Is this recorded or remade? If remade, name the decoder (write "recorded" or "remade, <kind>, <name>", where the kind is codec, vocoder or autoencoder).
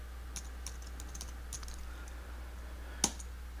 recorded